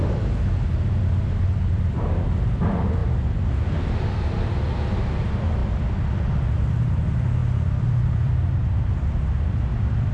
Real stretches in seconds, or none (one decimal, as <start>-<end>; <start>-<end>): 3.0-3.9; 5.6-7.0